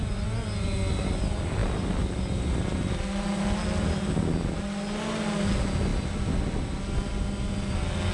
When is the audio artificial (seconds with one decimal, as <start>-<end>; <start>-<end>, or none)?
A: none